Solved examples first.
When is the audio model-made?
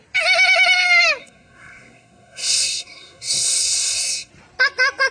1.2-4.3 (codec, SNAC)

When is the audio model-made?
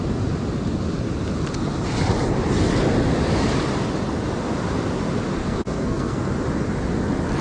5.4-6.3 (codec, SNAC)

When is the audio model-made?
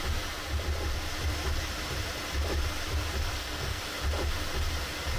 3.3-3.8 (codec, SNAC)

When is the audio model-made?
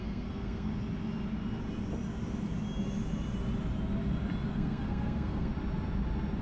0.0-0.7 (codec, SNAC); 4.5-5.5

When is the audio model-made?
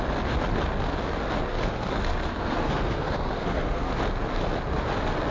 1.5-3.9 (codec, SNAC)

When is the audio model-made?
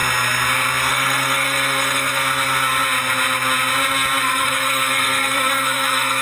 0.9-2.2 (codec, SNAC); 4.2-6.2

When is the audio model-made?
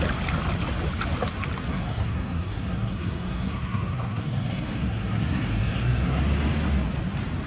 1.7-6.2 (codec, SNAC)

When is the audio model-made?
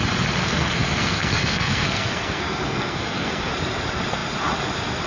0.4-3.5 (codec, SNAC)